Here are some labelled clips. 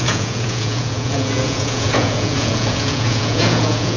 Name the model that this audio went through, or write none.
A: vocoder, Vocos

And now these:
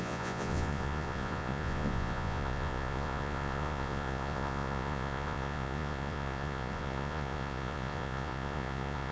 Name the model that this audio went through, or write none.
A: vocoder, Vocos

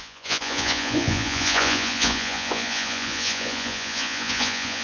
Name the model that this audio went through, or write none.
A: vocoder, Vocos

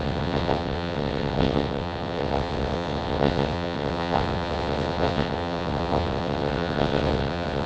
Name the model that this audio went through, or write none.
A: vocoder, WaveNeXt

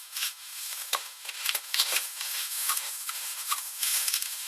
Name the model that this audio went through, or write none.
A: autoencoder, DAC-VAE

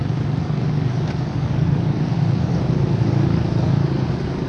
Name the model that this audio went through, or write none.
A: codec, DAC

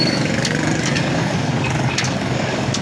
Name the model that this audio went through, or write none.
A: codec, DAC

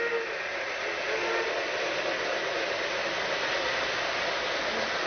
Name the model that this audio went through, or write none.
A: none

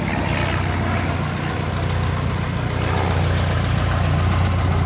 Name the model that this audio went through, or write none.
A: none